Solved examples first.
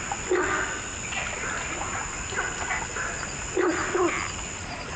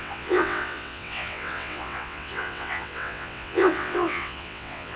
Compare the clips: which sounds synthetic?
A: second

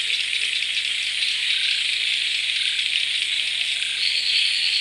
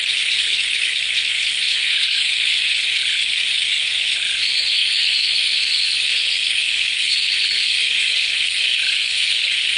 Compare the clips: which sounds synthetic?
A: second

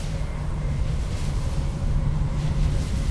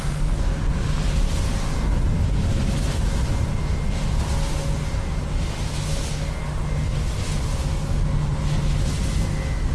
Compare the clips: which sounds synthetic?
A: first